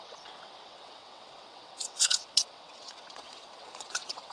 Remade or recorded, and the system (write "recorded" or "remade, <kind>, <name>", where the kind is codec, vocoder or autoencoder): remade, vocoder, WaveNeXt